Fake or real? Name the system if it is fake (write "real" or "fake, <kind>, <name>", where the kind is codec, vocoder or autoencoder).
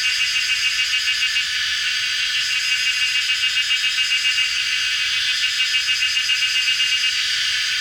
real